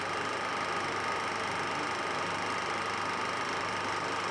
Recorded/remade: recorded